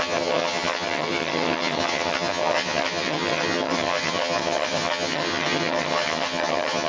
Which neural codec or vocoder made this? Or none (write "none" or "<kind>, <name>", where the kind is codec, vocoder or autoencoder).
vocoder, HiFi-GAN